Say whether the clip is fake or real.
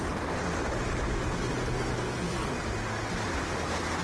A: real